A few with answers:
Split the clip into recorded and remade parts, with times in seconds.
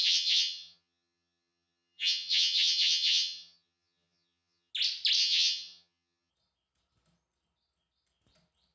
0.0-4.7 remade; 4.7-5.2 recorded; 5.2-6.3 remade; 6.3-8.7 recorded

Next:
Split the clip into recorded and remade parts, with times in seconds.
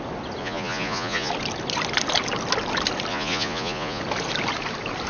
0.0-0.4 recorded; 0.4-1.3 remade; 1.3-3.1 recorded; 3.1-4.0 remade; 4.0-5.1 recorded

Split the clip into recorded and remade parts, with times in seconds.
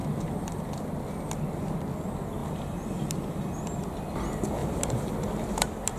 0.0-0.8 remade; 0.8-2.4 recorded; 2.4-3.8 remade; 3.8-4.6 recorded; 4.6-5.1 remade; 5.1-6.0 recorded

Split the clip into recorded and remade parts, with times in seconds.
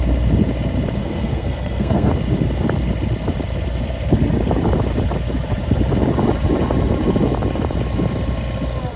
0.0-1.0 recorded; 1.0-2.1 remade; 2.1-9.0 recorded